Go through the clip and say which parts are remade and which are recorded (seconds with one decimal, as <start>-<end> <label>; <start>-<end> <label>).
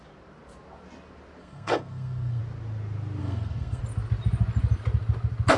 0.0-1.4 recorded; 1.4-2.4 remade; 2.4-3.2 recorded; 3.2-3.8 remade; 3.8-5.6 recorded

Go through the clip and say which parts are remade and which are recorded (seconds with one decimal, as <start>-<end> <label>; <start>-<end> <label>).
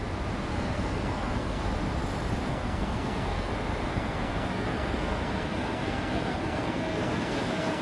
0.0-0.5 recorded; 0.5-1.6 remade; 1.6-2.5 recorded; 2.5-3.5 remade; 3.5-3.9 recorded; 3.9-7.8 remade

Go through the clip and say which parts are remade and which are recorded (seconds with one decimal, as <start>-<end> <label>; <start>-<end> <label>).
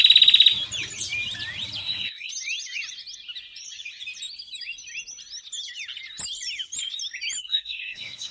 0.0-1.8 recorded; 1.8-2.3 remade; 2.3-7.4 recorded; 7.4-8.3 remade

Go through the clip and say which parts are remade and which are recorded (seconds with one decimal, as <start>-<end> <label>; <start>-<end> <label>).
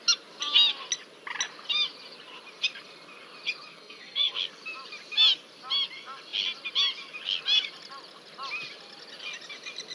0.0-3.7 recorded; 3.7-4.4 remade; 4.4-9.9 recorded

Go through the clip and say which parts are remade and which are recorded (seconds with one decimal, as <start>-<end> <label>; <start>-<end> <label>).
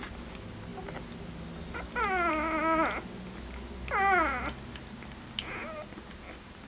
0.0-6.7 recorded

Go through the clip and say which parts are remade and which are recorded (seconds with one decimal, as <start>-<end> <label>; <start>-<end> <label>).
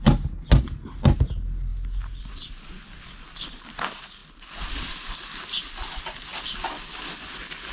0.0-7.7 recorded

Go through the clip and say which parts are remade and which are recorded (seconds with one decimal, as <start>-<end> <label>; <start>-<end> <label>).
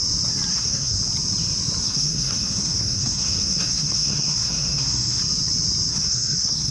0.0-0.5 recorded; 0.5-1.0 remade; 1.0-1.8 recorded; 1.8-5.2 remade; 5.2-5.9 recorded; 5.9-6.7 remade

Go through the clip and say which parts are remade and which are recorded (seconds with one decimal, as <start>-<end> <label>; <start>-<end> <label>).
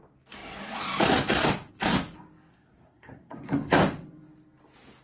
0.0-2.5 recorded; 2.5-3.8 remade; 3.8-5.0 recorded